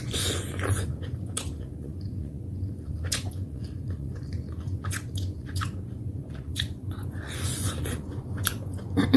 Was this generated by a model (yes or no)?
yes